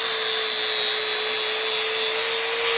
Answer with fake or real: real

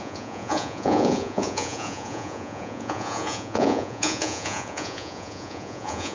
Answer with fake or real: fake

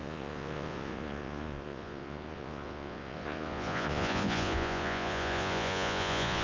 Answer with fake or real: fake